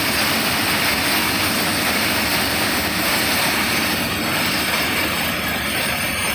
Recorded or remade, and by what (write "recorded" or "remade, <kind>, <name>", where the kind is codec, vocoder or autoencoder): recorded